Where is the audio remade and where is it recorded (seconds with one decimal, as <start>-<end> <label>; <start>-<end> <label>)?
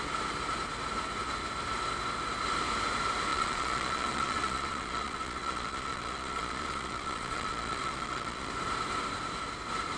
0.0-3.3 recorded; 3.3-8.5 remade; 8.5-10.0 recorded